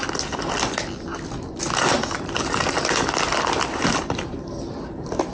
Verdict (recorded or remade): recorded